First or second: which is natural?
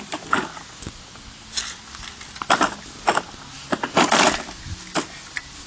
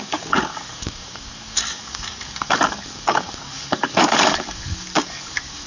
first